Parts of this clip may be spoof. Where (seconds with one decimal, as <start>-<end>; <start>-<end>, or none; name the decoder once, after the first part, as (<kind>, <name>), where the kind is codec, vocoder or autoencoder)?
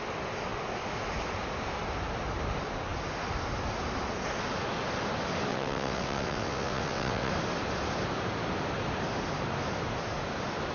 5.5-7.3 (vocoder, WaveNeXt)